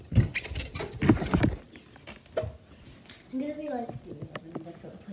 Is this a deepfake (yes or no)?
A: no